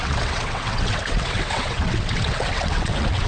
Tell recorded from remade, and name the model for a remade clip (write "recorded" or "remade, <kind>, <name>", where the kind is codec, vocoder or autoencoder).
remade, vocoder, WaveNeXt